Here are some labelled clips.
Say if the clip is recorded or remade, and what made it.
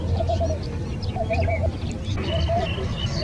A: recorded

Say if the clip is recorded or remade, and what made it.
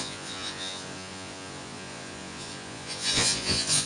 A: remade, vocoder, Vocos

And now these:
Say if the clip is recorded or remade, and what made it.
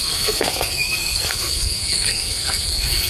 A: remade, codec, SNAC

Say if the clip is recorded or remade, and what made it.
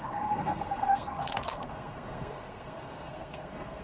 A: remade, codec, SNAC